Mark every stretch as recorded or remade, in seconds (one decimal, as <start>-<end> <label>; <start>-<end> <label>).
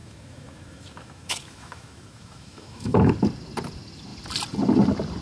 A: 0.0-3.1 remade; 3.1-5.2 recorded